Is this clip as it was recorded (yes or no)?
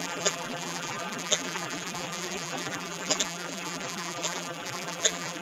no